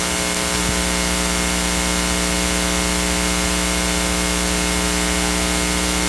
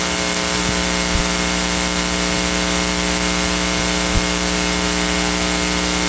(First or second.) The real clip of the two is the first